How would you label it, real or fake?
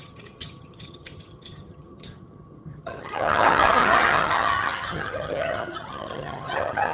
fake